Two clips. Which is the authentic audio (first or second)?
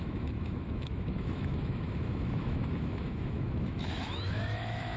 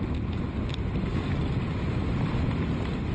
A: second